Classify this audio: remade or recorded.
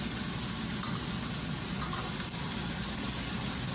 recorded